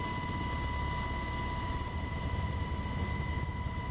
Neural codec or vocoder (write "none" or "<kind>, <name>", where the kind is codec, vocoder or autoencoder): none